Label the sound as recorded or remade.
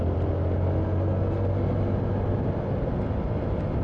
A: recorded